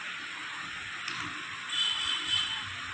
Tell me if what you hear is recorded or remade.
recorded